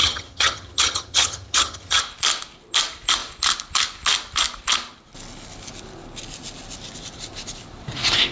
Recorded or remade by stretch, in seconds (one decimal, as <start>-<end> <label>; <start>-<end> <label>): 0.0-2.0 remade; 2.0-8.3 recorded